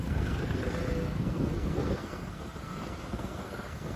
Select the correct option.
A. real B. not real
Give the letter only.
B